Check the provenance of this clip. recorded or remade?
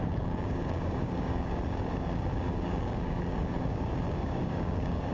remade